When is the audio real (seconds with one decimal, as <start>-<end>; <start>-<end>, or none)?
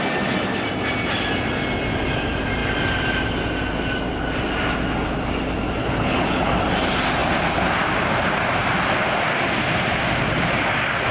0.0-5.8; 6.5-11.1